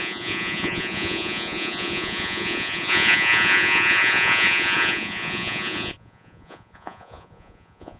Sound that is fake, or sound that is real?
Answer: fake